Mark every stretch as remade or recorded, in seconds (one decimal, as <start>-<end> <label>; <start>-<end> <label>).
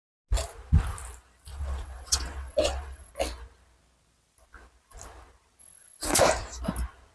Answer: 0.0-1.5 recorded; 1.5-3.1 remade; 3.1-5.6 recorded; 5.6-6.1 remade; 6.1-7.1 recorded